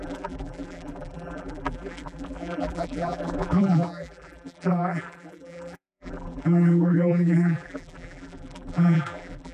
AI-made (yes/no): yes